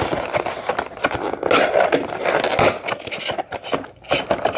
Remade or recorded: recorded